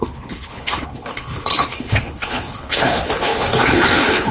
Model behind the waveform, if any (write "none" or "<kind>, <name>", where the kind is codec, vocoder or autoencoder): codec, HILCodec